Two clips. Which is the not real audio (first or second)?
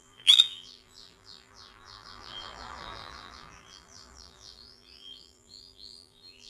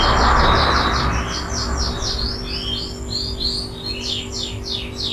first